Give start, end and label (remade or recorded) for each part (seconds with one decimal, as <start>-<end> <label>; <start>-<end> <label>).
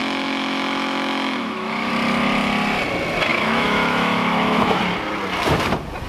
0.0-1.9 remade; 1.9-3.3 recorded; 3.3-4.8 remade; 4.8-6.1 recorded